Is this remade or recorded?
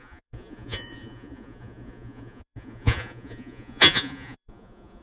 remade